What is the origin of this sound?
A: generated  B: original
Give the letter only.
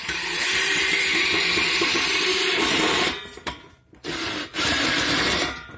A